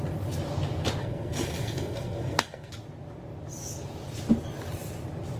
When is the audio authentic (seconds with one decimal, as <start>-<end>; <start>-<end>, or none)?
0.0-1.0; 2.7-5.4